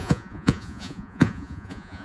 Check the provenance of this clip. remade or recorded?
remade